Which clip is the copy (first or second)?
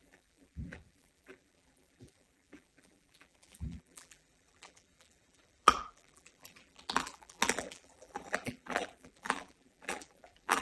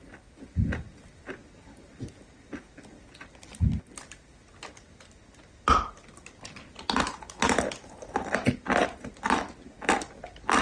first